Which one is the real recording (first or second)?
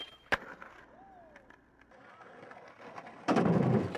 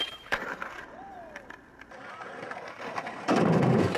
first